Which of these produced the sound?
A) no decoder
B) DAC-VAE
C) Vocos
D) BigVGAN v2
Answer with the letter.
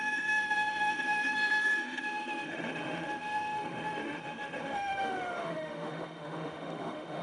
B